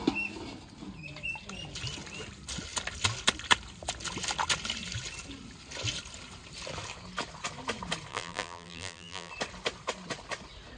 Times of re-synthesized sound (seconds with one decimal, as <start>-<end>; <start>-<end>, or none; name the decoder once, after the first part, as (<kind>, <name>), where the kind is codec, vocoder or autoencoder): 8.1-9.3 (vocoder, BigVGAN v2)